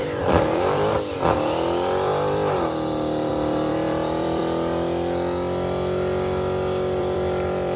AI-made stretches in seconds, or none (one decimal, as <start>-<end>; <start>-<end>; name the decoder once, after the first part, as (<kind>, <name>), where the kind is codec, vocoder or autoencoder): 0.0-4.4 (vocoder, BigVGAN v2); 7.0-7.8